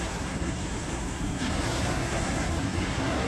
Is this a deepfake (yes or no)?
yes